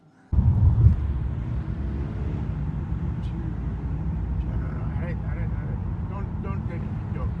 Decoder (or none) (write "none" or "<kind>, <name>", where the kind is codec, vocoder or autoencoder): none